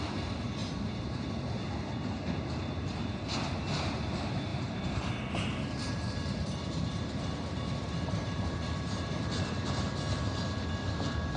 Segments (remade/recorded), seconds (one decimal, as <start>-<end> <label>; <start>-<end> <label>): 0.0-0.6 recorded; 0.6-1.3 remade; 1.3-4.5 recorded; 4.5-9.7 remade; 9.7-11.4 recorded